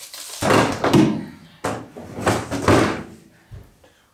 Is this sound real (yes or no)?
yes